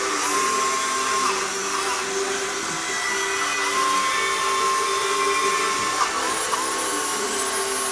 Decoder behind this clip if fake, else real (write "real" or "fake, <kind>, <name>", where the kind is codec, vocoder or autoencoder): real